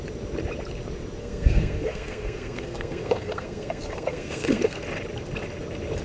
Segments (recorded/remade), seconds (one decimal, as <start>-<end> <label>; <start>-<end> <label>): 0.0-1.2 recorded; 1.2-4.8 remade; 4.8-6.0 recorded